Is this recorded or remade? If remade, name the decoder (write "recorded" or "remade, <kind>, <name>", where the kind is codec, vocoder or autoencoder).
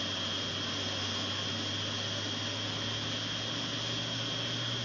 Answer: recorded